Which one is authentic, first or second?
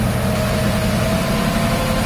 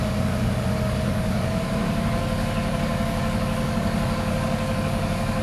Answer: first